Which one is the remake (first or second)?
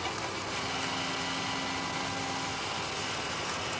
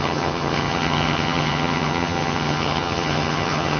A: second